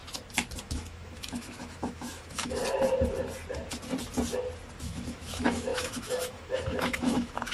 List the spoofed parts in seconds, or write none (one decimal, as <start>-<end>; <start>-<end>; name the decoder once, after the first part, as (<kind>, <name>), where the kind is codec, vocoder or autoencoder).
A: 0.6-2.6 (autoencoder, DAC-VAE); 4.8-7.5